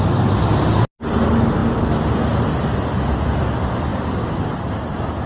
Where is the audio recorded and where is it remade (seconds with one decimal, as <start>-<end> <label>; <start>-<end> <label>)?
0.0-3.9 recorded; 3.9-4.5 remade; 4.5-5.3 recorded